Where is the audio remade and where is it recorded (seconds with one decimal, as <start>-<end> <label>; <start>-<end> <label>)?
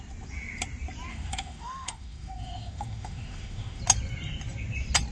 0.0-1.1 recorded; 1.1-3.8 remade; 3.8-5.1 recorded